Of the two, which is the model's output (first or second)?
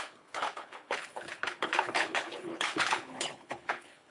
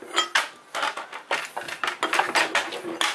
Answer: first